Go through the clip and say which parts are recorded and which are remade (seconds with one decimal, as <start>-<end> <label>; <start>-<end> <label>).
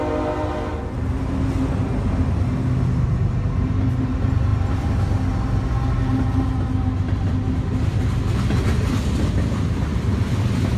0.0-10.8 recorded